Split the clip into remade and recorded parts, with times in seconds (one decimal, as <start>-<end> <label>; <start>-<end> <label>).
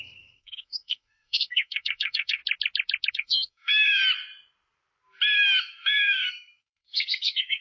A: 0.0-2.4 remade; 2.4-3.1 recorded; 3.1-4.0 remade; 4.0-5.6 recorded; 5.6-7.6 remade